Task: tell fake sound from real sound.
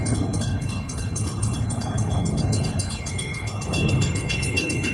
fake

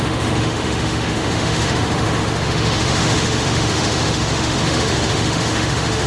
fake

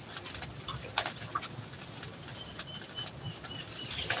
real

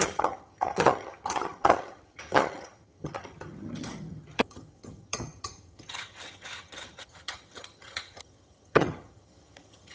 fake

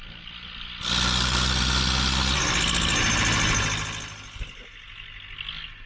real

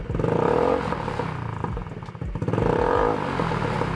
real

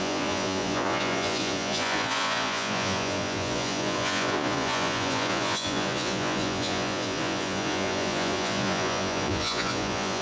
fake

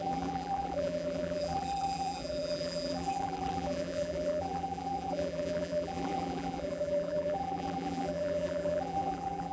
fake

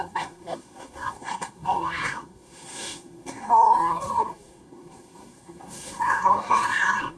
fake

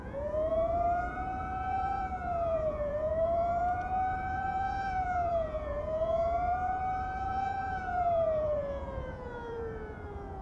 fake